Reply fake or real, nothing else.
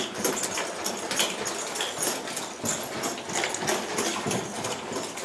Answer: real